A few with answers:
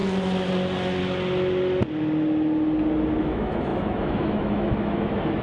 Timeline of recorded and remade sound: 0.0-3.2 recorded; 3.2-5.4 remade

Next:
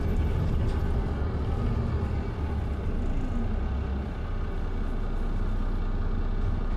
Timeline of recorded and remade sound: 0.0-6.8 recorded

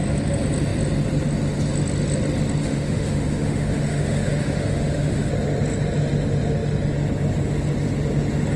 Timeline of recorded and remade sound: 0.0-2.6 recorded; 2.6-5.3 remade; 5.3-8.6 recorded

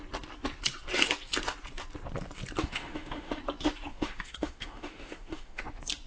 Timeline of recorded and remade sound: 0.0-2.6 recorded; 2.6-3.4 remade; 3.4-3.9 recorded; 3.9-5.6 remade; 5.6-6.1 recorded

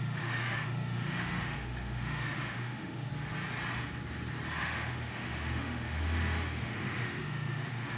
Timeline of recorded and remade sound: 0.0-3.1 remade; 3.1-4.6 recorded; 4.6-8.0 remade

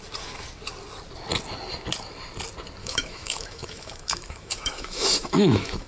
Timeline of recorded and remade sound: 0.0-2.8 recorded; 2.8-5.9 remade